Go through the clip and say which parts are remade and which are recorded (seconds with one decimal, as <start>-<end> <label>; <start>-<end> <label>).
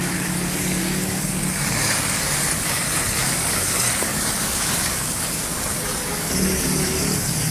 0.0-7.5 remade